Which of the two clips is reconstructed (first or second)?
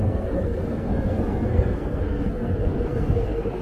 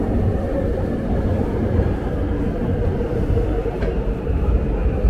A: first